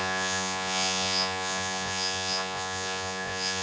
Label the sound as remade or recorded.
remade